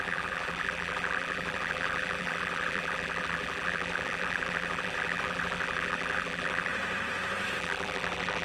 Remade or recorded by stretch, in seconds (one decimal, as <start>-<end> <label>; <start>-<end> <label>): 0.0-6.7 remade; 6.7-7.6 recorded; 7.6-8.4 remade